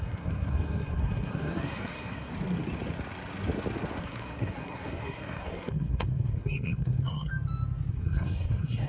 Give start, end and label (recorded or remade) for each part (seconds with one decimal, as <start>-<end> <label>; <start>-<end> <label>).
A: 0.0-2.3 remade; 2.3-4.0 recorded; 4.0-7.3 remade; 7.3-7.9 recorded; 7.9-8.9 remade